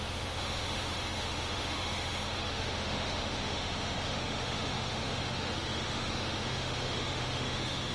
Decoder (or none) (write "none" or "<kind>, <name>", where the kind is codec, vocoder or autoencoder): autoencoder, DAC-VAE